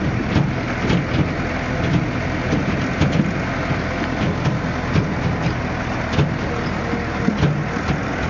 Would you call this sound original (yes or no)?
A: yes